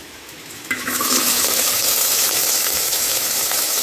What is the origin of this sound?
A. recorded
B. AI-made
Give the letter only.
B